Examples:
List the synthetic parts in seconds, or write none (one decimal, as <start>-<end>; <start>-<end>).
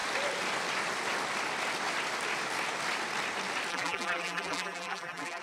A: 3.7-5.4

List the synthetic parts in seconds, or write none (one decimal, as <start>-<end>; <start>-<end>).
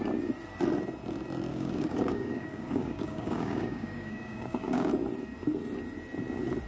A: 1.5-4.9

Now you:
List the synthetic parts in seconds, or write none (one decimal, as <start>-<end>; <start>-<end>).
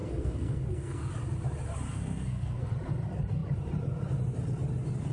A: 0.0-1.1; 1.9-2.7